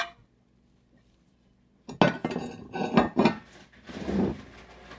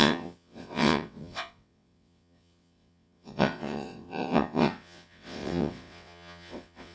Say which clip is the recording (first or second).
first